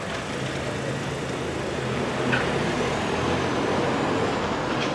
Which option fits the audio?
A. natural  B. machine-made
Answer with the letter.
A